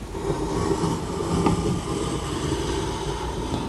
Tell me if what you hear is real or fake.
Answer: real